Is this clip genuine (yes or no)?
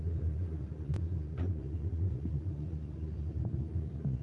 no